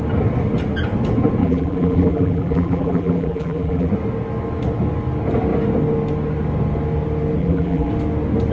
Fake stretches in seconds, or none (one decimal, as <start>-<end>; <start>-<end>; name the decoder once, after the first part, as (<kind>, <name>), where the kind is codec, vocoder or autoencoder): 1.4-3.9 (vocoder, BigVGAN v2); 7.4-7.9